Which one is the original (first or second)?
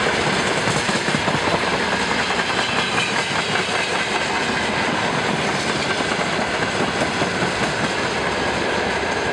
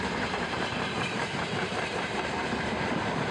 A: first